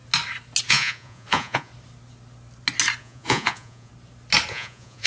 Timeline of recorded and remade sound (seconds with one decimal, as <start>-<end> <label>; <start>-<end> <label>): 0.0-0.6 recorded; 0.6-1.7 remade; 1.7-3.0 recorded; 3.0-3.9 remade; 3.9-4.5 recorded; 4.5-5.1 remade